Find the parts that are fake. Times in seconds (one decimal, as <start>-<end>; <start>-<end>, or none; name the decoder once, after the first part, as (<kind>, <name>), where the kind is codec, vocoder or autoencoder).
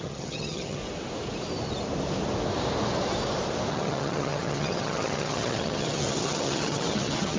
0.0-0.8 (vocoder, HiFi-GAN); 3.7-7.4